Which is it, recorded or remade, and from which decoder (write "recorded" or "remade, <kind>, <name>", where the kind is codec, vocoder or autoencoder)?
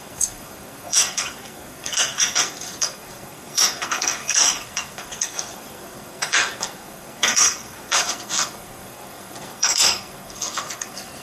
remade, codec, SNAC